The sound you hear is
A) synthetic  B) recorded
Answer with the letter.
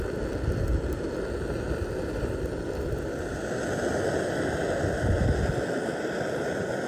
B